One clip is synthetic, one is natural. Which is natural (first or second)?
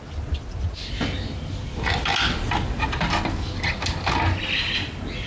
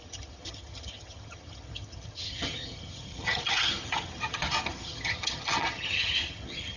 first